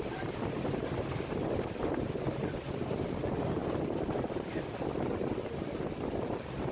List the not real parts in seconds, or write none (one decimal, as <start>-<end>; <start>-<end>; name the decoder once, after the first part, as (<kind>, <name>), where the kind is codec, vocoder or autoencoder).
none